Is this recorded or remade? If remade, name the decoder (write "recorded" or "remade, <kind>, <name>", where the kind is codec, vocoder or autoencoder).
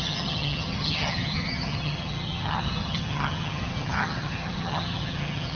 remade, vocoder, HiFi-GAN